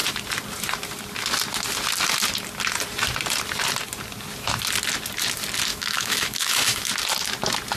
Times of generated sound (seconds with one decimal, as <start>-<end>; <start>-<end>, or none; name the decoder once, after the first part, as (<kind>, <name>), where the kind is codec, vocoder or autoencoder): 5.7-6.9 (autoencoder, DAC-VAE)